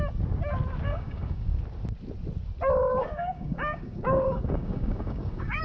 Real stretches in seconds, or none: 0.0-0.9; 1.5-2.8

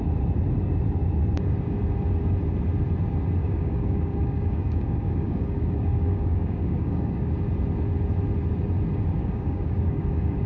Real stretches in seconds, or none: 0.0-3.4; 7.3-9.2